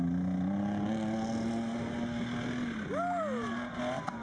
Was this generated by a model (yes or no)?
no